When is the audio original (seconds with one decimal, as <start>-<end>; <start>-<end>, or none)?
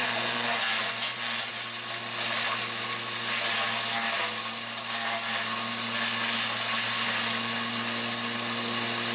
1.5-9.1